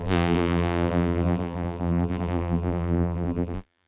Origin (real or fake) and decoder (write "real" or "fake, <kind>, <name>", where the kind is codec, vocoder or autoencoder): fake, vocoder, BigVGAN v2